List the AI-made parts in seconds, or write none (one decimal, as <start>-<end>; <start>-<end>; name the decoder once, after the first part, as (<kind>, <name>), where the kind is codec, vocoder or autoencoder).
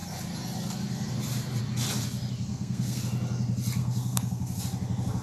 2.5-3.0 (codec, SNAC); 3.8-4.6